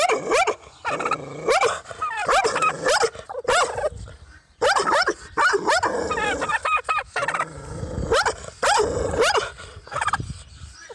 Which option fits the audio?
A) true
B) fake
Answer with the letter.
A